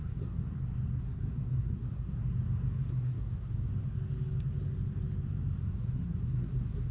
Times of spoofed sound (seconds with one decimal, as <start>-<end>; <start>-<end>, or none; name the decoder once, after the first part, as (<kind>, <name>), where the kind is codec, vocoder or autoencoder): 0.0-0.4 (codec, SNAC); 1.0-2.2; 2.9-3.7; 5.6-6.9